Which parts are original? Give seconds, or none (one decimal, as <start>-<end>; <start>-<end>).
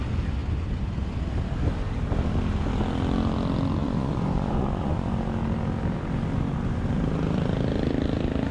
0.0-3.8; 5.1-8.5